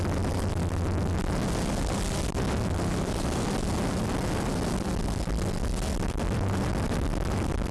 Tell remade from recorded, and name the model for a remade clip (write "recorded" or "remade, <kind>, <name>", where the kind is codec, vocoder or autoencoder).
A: recorded